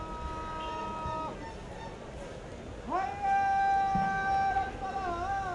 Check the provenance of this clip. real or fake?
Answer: real